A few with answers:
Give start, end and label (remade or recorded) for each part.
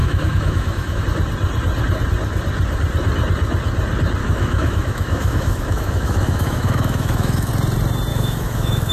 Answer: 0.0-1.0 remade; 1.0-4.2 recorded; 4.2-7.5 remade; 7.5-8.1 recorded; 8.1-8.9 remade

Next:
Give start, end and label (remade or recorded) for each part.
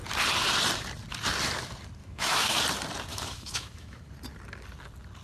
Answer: 0.0-2.0 recorded; 2.0-2.6 remade; 2.6-3.1 recorded; 3.1-4.1 remade; 4.1-5.2 recorded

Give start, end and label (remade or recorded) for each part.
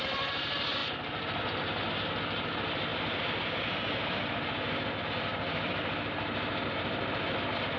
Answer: 0.0-7.8 recorded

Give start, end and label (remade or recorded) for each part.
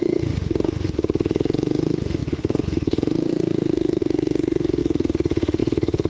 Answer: 0.0-6.1 remade